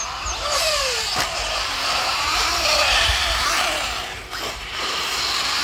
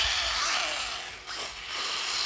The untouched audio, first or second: second